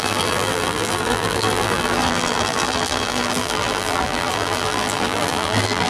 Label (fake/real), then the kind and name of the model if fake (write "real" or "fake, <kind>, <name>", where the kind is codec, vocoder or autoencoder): fake, vocoder, BigVGAN v2